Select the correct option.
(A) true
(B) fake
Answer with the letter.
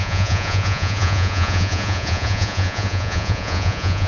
B